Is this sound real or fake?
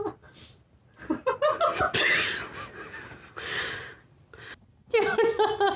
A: real